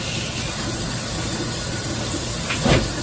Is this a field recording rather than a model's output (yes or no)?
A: yes